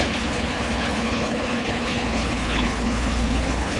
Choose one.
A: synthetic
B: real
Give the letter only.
A